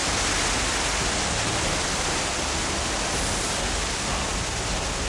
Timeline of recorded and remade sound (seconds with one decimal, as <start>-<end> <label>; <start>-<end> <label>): 0.0-5.1 recorded